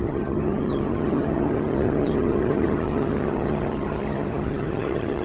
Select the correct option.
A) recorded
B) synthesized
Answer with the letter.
B